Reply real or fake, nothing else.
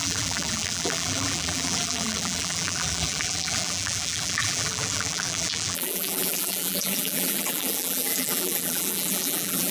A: fake